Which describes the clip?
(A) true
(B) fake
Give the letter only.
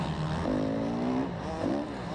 A